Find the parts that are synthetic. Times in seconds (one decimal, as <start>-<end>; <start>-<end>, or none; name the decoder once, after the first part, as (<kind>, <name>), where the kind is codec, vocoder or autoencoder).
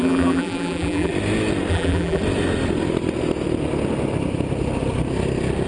0.0-1.1 (vocoder, BigVGAN v2); 1.7-2.2